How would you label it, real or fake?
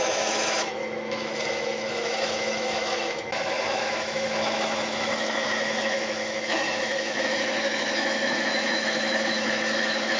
fake